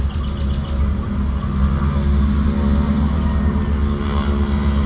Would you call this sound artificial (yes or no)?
no